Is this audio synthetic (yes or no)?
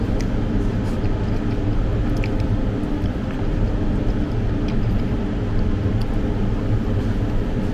no